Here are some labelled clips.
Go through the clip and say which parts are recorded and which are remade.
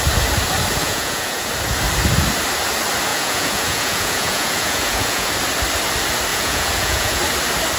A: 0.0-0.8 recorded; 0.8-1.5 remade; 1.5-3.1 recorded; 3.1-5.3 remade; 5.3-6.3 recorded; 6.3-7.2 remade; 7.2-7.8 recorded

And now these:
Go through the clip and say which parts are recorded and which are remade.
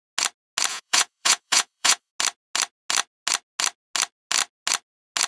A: 0.0-0.7 recorded; 0.7-2.1 remade; 2.1-5.3 recorded